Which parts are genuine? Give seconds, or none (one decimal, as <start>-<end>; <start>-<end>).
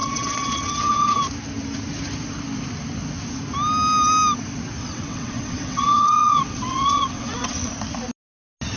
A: 1.2-4.8; 7.7-8.8